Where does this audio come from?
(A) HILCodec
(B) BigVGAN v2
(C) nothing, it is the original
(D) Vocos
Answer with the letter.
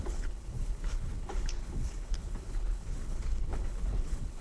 A